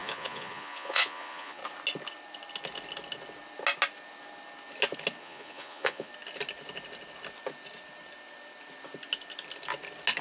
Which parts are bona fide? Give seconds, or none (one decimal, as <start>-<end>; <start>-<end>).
1.6-5.2; 6.1-10.2